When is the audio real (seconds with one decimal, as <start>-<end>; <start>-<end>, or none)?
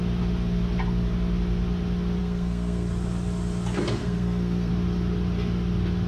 0.0-2.2; 2.9-4.0; 4.7-6.1